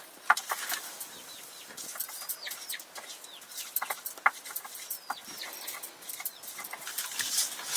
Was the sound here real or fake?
real